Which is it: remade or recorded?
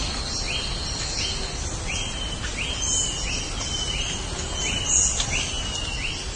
recorded